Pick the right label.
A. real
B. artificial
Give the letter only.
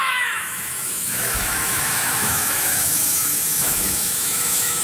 B